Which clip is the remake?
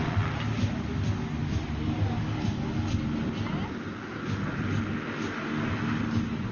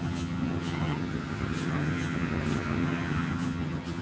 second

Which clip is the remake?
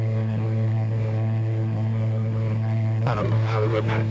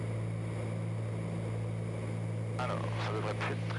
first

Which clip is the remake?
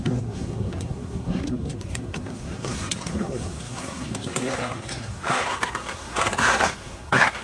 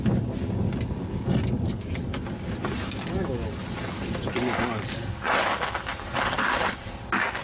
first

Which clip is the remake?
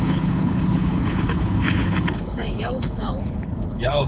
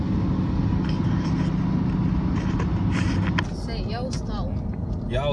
first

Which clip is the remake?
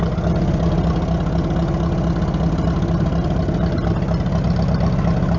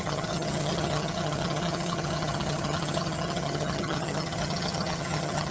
second